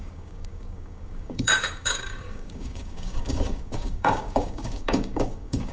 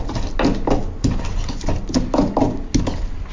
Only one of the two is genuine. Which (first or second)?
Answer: second